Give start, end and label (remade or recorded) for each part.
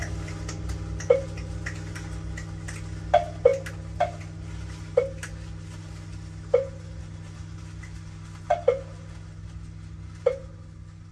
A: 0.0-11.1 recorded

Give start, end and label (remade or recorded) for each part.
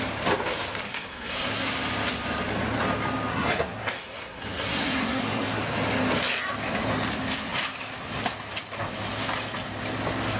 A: 0.0-0.9 recorded; 0.9-1.7 remade; 1.7-3.3 recorded; 3.3-5.6 remade; 5.6-10.4 recorded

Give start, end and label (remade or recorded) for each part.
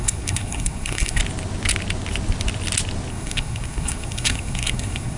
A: 0.0-1.2 remade; 1.2-3.1 recorded; 3.1-5.2 remade